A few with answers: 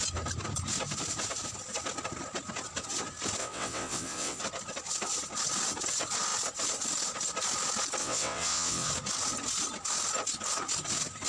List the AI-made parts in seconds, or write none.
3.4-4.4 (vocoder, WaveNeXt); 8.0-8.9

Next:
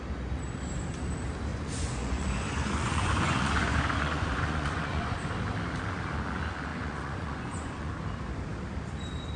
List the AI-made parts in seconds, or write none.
1.5-5.2 (vocoder, Vocos); 6.7-7.9